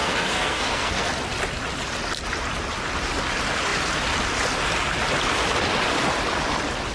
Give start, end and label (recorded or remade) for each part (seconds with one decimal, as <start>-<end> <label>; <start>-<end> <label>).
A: 0.0-1.1 remade; 1.1-6.9 recorded